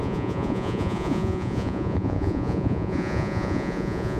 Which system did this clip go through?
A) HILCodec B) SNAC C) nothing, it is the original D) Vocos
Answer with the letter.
D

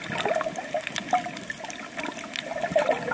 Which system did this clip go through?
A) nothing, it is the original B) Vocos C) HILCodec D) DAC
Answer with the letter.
A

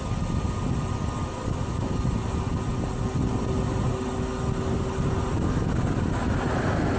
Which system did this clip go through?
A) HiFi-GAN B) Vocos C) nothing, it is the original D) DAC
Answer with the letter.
C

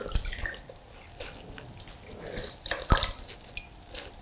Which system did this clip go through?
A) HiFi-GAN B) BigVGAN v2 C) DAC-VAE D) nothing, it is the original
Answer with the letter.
D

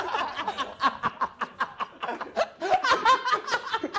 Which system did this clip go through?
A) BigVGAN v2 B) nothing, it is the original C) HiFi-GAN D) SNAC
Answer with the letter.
B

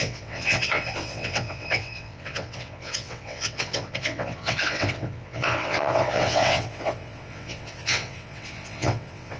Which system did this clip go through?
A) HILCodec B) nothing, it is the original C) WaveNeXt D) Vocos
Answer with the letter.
C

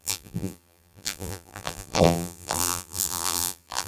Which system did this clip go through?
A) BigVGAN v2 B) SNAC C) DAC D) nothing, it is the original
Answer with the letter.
A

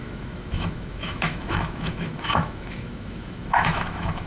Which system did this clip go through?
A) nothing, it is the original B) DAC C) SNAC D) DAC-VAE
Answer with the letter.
D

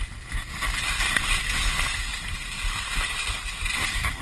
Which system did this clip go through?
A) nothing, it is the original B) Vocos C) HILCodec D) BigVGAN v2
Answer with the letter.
A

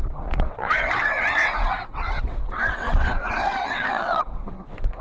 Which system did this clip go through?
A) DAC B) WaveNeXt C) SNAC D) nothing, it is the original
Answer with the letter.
B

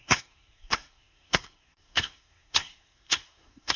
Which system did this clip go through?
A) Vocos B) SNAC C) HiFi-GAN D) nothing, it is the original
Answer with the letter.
B